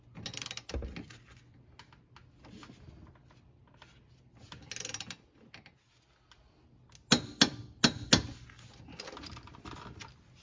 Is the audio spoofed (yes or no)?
no